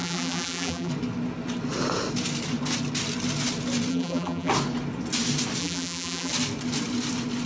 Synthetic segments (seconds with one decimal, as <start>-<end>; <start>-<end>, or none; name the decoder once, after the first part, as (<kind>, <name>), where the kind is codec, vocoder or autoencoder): 0.0-0.9 (vocoder, BigVGAN v2); 3.9-4.5; 5.6-6.3